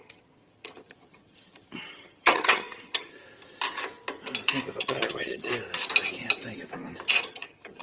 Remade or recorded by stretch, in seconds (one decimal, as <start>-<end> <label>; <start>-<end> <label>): 0.0-3.2 remade; 3.2-4.8 recorded; 4.8-5.5 remade; 5.5-7.2 recorded; 7.2-7.8 remade